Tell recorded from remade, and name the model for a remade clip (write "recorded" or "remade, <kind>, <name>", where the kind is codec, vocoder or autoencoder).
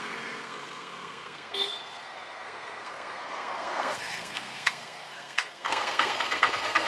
remade, codec, SNAC